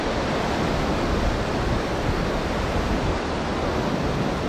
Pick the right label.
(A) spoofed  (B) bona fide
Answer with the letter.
B